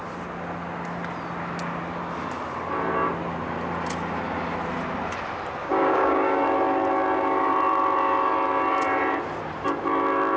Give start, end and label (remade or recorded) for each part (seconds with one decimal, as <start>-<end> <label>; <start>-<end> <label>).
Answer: 0.0-5.6 recorded; 5.6-6.4 remade; 6.4-10.4 recorded